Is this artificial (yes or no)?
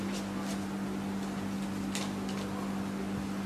no